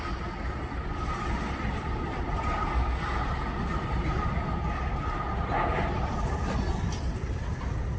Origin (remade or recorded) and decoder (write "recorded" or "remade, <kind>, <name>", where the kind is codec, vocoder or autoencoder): recorded